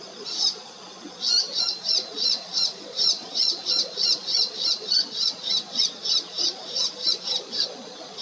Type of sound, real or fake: fake